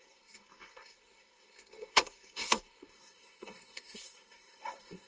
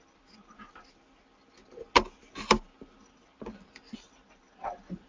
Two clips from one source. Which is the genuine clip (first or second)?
second